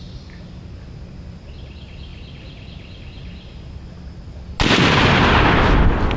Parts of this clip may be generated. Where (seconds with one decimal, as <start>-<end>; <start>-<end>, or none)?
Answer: none